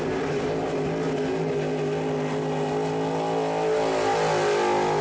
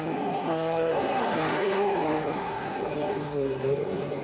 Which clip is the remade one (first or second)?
second